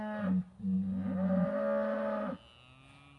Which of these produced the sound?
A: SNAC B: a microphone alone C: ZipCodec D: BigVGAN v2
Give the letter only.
B